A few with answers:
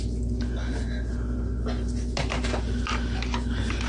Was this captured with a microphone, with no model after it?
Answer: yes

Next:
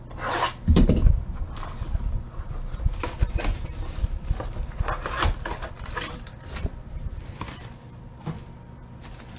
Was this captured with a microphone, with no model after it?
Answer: yes